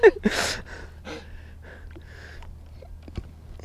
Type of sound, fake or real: real